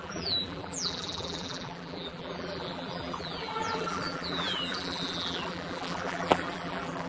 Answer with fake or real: fake